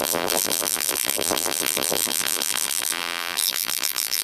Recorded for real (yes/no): no